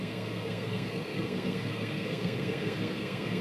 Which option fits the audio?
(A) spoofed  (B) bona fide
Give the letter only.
A